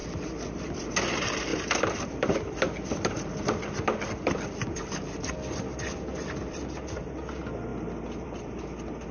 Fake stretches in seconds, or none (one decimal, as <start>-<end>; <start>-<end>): 0.0-0.9; 1.5-6.7; 7.7-8.6